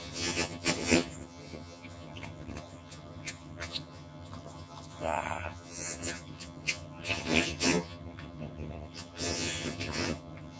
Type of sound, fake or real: fake